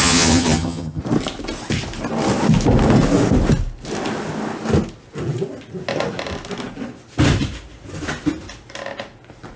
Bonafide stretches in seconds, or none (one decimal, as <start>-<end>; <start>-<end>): 1.0-9.6